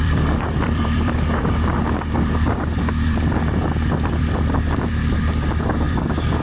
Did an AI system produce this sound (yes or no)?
yes